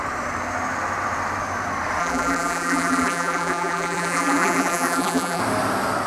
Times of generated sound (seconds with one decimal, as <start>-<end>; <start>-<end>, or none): 2.0-5.4